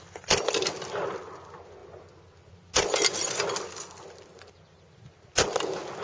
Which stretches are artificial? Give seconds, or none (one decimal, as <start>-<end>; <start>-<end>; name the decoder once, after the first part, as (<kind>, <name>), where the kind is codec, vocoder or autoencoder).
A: none